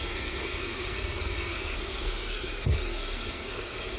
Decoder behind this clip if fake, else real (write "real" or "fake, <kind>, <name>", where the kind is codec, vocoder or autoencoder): fake, codec, SNAC